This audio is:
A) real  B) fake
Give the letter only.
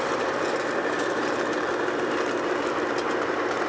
A